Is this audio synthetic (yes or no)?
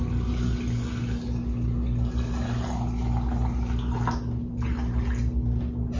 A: no